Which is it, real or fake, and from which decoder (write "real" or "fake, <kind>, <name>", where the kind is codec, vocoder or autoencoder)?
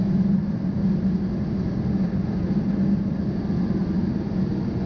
real